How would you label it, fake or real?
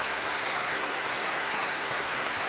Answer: fake